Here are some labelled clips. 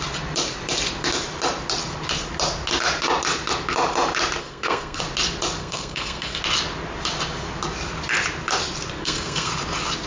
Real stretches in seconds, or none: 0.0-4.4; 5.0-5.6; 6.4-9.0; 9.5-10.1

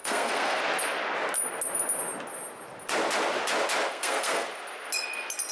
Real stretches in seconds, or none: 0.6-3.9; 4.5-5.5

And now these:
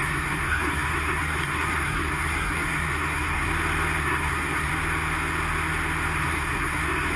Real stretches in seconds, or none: 3.5-4.0; 4.7-6.2

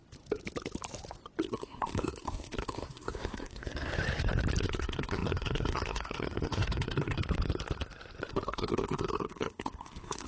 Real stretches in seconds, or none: 0.0-1.4; 3.9-4.6; 7.2-8.2

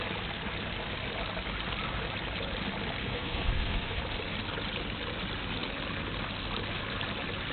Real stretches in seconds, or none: 0.0-3.0; 4.0-7.5

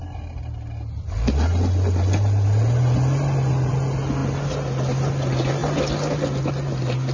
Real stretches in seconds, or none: 0.0-7.1

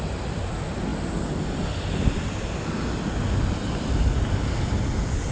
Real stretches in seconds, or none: 0.0-5.3